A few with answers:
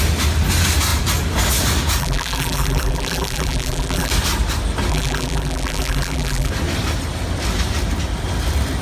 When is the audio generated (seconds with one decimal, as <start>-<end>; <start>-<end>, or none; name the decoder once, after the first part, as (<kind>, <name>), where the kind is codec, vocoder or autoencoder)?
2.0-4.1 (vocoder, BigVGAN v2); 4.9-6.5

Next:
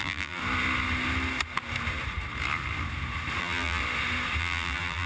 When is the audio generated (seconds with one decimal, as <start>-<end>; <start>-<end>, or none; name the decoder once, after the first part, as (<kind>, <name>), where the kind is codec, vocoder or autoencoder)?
0.0-0.4 (vocoder, BigVGAN v2); 3.4-3.8; 4.4-5.1

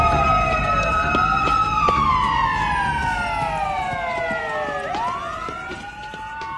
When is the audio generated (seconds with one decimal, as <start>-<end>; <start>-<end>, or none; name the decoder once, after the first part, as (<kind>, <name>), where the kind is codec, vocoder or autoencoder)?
none

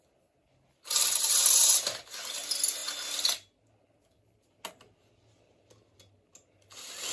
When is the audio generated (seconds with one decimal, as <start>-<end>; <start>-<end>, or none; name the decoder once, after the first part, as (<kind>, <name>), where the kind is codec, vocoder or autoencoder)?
none

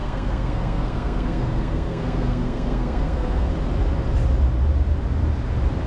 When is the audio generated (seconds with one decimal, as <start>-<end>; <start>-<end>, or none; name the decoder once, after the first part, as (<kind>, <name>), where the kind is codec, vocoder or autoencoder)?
0.0-3.5 (codec, SNAC)